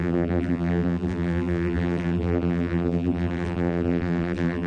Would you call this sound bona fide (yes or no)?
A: no